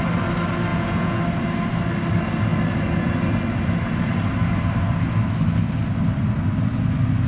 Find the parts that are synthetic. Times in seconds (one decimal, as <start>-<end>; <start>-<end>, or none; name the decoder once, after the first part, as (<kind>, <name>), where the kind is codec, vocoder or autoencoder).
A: 0.7-1.2 (vocoder, Vocos)